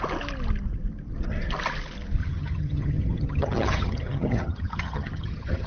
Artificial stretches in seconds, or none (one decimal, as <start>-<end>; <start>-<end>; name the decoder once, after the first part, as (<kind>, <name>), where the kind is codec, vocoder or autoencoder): 2.2-5.7 (vocoder, HiFi-GAN)